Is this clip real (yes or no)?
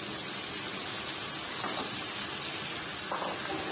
yes